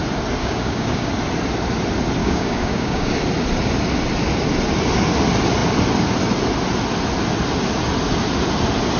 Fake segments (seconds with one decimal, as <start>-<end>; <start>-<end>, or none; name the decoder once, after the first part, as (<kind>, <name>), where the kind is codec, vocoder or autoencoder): 0.4-1.1 (codec, DAC); 2.2-3.1